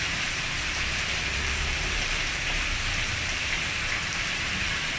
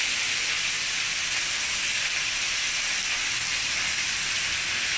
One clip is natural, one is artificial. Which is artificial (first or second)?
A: first